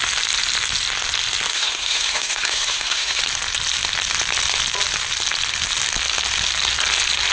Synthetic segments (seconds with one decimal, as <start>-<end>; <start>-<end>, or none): 1.5-3.2